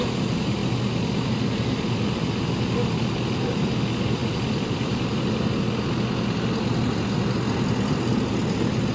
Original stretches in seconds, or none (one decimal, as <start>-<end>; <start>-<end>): 0.0-8.9